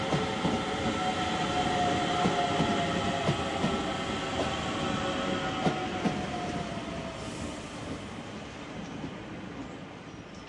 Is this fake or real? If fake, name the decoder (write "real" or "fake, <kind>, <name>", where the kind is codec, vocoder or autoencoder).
real